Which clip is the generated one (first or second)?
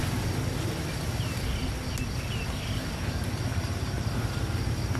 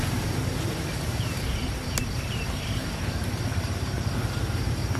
second